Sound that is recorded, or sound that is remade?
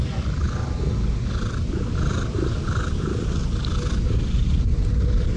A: recorded